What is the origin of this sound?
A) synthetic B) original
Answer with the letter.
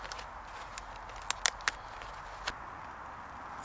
B